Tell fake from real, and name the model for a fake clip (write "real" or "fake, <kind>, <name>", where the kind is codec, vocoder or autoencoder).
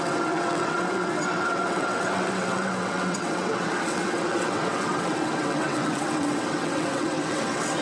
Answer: fake, vocoder, WaveNeXt